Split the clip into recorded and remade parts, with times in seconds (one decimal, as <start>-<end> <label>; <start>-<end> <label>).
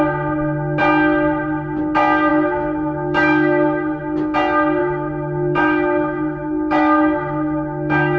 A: 0.0-2.3 recorded; 2.3-4.0 remade; 4.0-4.8 recorded; 4.8-8.2 remade